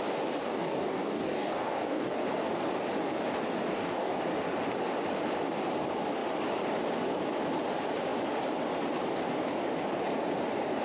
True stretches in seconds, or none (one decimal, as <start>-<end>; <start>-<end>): 0.0-0.4; 2.2-3.7; 4.2-10.8